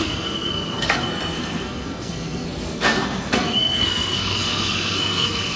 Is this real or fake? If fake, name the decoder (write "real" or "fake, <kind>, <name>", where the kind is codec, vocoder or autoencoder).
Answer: fake, codec, SNAC